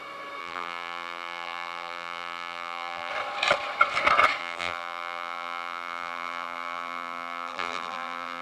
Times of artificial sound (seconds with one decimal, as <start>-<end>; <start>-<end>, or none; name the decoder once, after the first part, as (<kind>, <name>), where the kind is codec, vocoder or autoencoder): 0.4-3.1 (vocoder, BigVGAN v2); 4.4-8.4